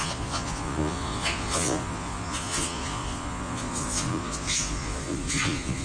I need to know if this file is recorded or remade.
remade